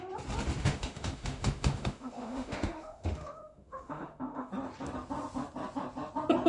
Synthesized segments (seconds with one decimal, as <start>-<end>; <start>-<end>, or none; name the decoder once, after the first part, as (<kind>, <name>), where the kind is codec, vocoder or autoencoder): 0.6-4.5 (autoencoder, DAC-VAE)